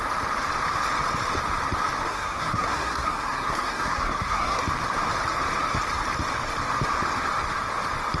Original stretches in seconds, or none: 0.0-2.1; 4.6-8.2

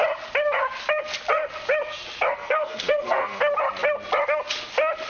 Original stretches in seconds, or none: 0.0-2.3; 3.4-5.1

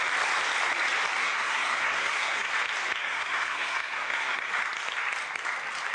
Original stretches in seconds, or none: 0.0-1.2; 2.5-3.0; 4.5-5.9

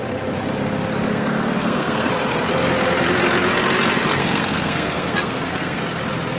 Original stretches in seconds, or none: 0.0-1.1; 2.1-4.1; 5.8-6.4

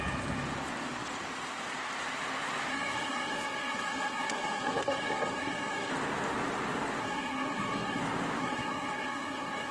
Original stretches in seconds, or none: 0.0-2.7; 5.9-7.0; 8.0-8.4